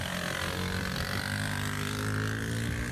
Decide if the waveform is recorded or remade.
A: recorded